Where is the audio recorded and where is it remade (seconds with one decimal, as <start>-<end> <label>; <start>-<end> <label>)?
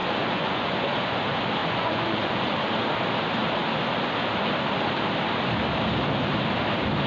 0.0-1.2 remade; 1.2-1.6 recorded; 1.6-2.5 remade; 2.5-7.1 recorded